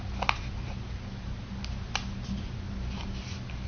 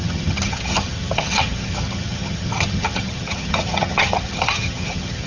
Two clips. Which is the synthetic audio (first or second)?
second